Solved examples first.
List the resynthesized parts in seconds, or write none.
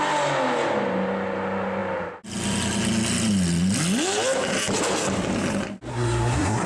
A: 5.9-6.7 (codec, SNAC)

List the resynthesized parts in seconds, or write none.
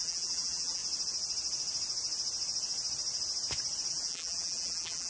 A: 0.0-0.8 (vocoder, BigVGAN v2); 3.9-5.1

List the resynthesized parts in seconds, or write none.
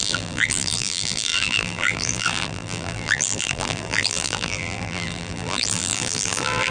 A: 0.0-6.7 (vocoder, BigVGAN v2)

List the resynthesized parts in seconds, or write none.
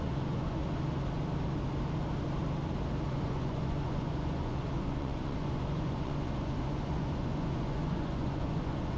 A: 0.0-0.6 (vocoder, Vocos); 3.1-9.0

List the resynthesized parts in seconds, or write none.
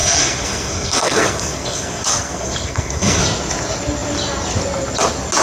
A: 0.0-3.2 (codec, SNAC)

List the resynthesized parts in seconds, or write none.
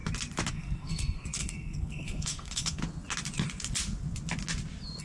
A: 0.5-2.8 (codec, SNAC)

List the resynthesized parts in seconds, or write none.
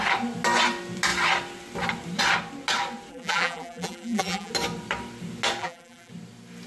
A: 3.1-4.5 (vocoder, BigVGAN v2); 5.6-6.1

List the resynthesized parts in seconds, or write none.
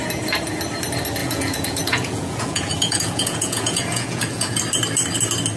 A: 1.2-4.6 (vocoder, Vocos)